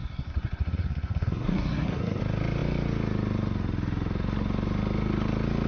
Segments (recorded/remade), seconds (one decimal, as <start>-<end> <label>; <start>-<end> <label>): 0.0-2.2 remade; 2.2-5.7 recorded